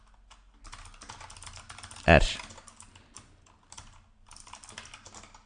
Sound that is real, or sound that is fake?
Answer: real